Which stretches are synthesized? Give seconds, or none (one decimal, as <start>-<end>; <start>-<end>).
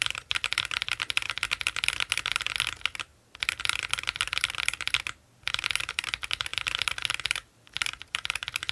3.1-3.6; 6.5-7.1